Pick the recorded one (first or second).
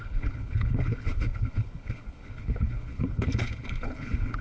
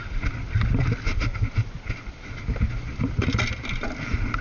second